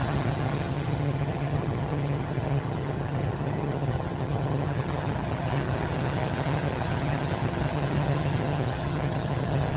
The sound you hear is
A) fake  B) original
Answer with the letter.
A